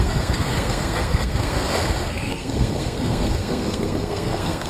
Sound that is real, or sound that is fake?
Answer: fake